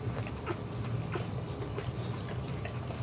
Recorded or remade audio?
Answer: recorded